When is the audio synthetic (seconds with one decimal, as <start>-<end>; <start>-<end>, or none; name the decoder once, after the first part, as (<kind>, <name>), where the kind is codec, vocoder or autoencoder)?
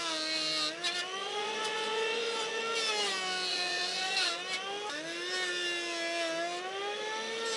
1.2-2.6 (vocoder, Vocos); 3.5-4.3